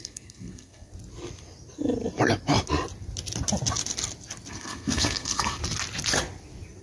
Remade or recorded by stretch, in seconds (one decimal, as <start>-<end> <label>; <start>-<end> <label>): 0.0-0.9 remade; 0.9-4.5 recorded; 4.5-5.6 remade; 5.6-6.8 recorded